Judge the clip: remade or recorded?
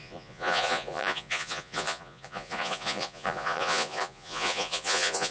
remade